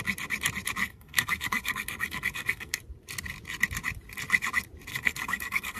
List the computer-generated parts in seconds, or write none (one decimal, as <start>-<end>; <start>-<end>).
0.8-2.8; 4.9-5.8